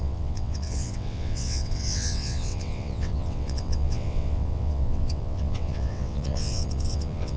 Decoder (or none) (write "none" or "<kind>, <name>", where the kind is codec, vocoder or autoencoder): vocoder, WaveNeXt